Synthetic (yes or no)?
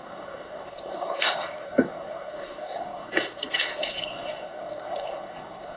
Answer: yes